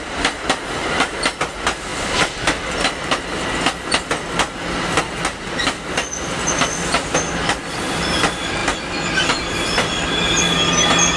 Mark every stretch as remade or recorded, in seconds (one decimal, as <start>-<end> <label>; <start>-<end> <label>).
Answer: 0.0-11.2 recorded